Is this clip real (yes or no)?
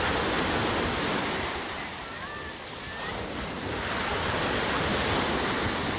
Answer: yes